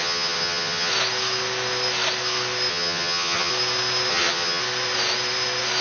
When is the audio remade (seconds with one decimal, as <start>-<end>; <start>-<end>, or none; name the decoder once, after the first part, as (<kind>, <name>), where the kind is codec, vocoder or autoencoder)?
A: 0.0-0.9 (vocoder, HiFi-GAN); 2.7-3.5; 4.1-4.6